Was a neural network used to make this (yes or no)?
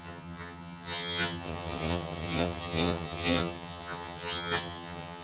yes